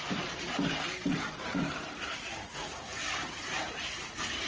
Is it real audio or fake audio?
fake